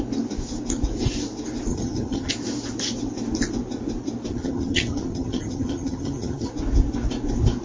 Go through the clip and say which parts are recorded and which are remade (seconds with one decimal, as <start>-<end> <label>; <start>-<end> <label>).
0.0-1.7 recorded; 1.7-2.3 remade; 2.3-4.3 recorded; 4.3-6.5 remade; 6.5-7.6 recorded